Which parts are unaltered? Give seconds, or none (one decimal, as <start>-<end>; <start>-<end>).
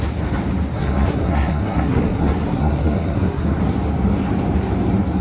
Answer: 0.0-0.7; 3.6-5.2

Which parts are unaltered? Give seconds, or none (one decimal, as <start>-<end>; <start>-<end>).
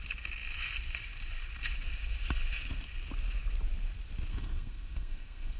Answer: 0.0-4.3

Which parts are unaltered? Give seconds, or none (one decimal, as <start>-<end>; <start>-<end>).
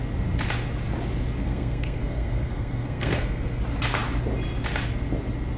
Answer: 0.0-1.4; 3.6-5.6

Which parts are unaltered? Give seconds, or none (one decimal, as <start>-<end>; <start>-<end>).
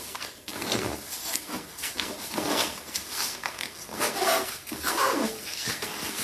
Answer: none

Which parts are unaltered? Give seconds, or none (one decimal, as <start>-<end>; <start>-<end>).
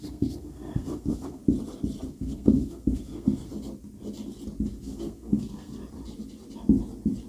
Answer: 1.4-2.1; 3.5-4.8; 5.8-7.3